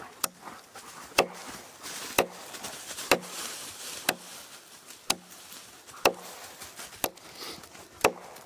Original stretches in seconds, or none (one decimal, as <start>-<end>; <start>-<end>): 0.0-8.5